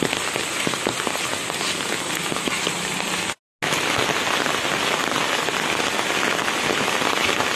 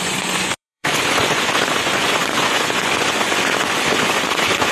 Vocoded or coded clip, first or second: second